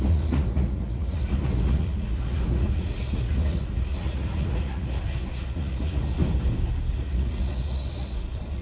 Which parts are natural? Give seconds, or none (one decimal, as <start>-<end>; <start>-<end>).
6.2-6.9